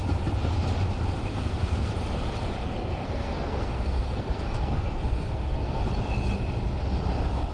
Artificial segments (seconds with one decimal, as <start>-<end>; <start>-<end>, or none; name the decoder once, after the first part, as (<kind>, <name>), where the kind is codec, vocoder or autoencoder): 1.3-1.9 (codec, SNAC); 3.0-5.9